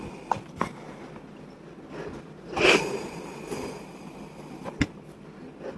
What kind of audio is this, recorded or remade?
recorded